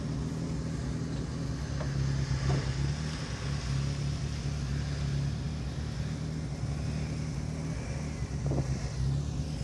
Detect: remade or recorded recorded